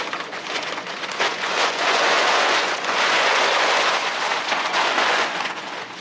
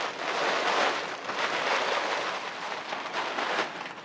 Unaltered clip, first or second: second